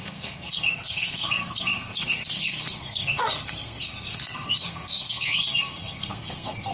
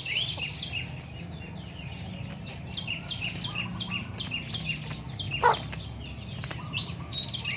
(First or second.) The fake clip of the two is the first